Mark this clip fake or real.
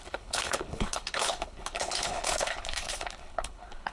fake